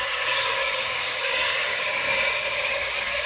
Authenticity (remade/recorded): remade